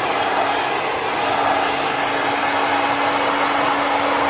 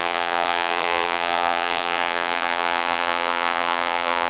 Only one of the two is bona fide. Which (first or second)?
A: first